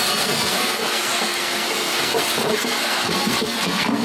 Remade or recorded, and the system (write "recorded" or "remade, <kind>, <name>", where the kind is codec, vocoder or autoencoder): remade, codec, SNAC